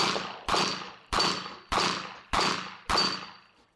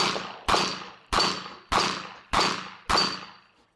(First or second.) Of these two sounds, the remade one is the first